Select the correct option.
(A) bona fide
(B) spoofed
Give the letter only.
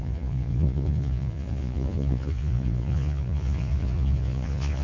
B